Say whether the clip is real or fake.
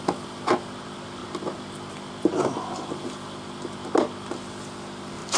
real